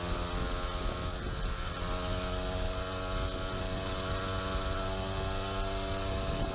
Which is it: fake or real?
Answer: real